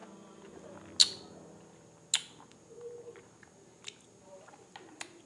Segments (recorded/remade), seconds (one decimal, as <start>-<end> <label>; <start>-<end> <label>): 0.0-5.3 recorded